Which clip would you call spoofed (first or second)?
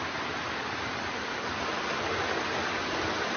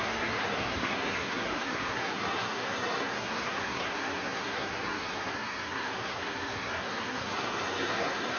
second